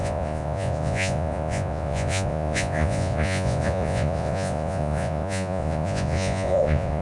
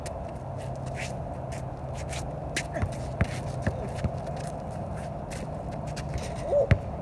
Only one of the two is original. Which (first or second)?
second